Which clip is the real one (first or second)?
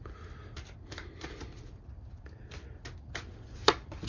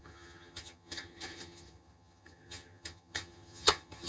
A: first